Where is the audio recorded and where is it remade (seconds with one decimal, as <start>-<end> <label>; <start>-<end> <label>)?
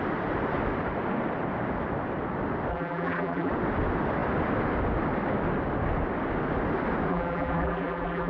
0.0-2.7 recorded; 2.7-3.5 remade; 3.5-7.1 recorded; 7.1-8.3 remade